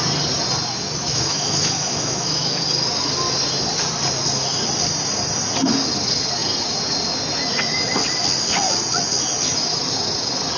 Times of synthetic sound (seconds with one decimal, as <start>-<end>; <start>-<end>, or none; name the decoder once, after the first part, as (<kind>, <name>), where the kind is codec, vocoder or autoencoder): 1.0-2.6 (autoencoder, DAC-VAE)